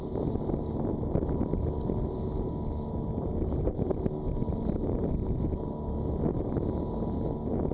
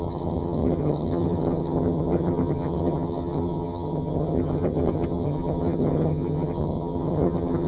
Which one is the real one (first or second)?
first